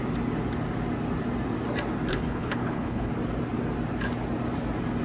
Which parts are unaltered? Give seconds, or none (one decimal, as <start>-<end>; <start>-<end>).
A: 0.0-2.1; 3.1-5.0